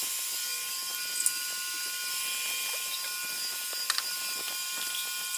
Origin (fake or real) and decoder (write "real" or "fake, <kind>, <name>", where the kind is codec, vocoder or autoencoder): real